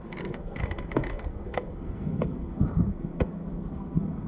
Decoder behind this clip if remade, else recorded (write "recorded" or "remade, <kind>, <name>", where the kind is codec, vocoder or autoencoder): remade, codec, SNAC